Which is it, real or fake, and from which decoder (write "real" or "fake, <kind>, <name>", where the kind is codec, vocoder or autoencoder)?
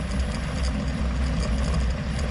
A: real